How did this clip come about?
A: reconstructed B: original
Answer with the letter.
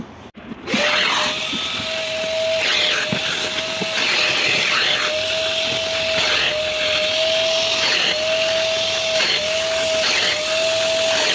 B